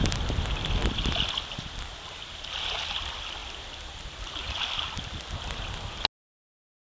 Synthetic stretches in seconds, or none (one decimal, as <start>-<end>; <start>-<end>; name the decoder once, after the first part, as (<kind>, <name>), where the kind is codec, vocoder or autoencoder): none